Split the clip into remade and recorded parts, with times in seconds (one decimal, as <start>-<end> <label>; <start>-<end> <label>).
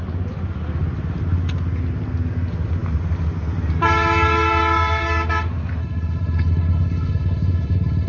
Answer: 0.0-5.8 recorded; 5.8-8.1 remade